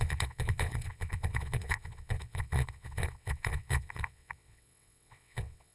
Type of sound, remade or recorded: remade